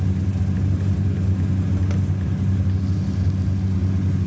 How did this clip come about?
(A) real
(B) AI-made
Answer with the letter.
A